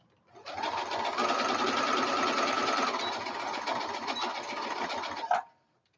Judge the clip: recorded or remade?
recorded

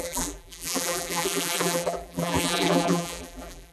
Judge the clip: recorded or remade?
remade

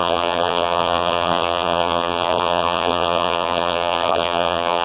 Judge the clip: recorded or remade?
remade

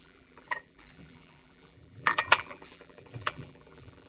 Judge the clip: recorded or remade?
remade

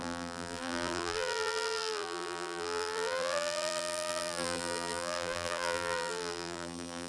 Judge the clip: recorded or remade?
remade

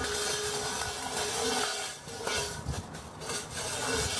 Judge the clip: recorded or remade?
recorded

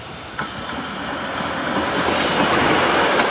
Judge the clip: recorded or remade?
recorded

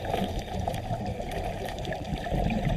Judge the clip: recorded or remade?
remade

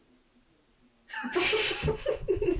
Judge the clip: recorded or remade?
recorded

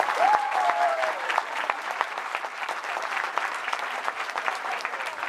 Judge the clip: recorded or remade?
remade